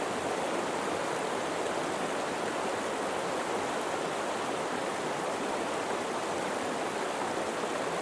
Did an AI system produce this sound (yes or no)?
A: no